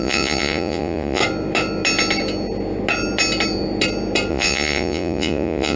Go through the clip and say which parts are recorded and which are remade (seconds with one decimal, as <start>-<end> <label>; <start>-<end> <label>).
0.0-1.2 remade; 1.2-4.3 recorded; 4.3-5.8 remade